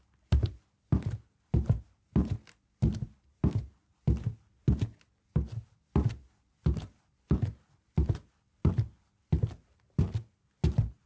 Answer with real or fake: real